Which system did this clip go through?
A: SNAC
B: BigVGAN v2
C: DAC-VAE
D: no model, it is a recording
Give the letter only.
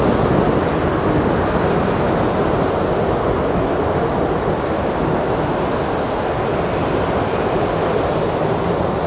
D